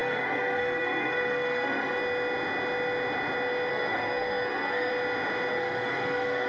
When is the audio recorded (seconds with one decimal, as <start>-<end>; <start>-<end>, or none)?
2.0-3.7; 4.9-5.5